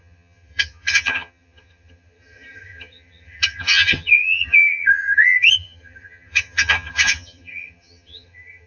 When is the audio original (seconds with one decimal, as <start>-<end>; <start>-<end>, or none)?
none